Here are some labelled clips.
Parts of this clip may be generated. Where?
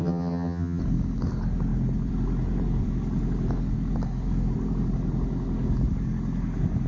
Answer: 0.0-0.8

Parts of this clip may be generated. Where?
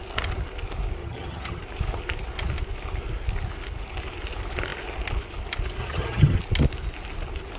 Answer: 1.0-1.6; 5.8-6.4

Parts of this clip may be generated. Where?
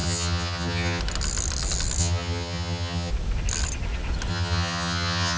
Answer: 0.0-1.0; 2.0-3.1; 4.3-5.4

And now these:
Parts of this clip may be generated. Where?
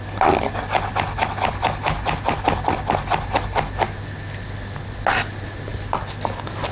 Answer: none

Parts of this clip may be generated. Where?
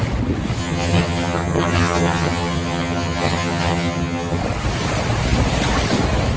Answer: 0.6-4.4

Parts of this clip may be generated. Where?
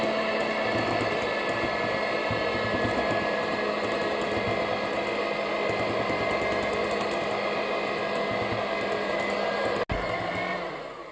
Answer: none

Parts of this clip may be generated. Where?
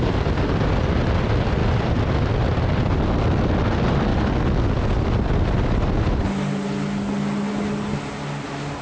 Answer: none